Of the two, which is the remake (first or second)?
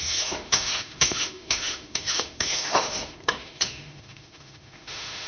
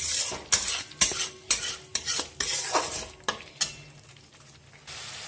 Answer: first